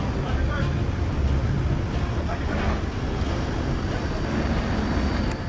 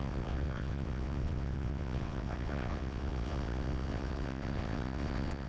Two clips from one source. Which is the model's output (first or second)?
second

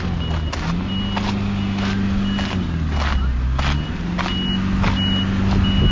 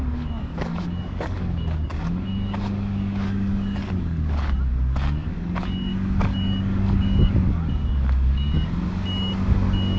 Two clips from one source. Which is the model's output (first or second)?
second